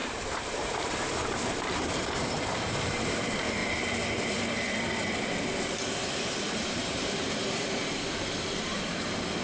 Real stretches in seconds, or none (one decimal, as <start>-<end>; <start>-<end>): 3.6-6.5; 7.4-8.8